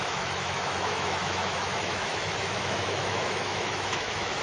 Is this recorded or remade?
remade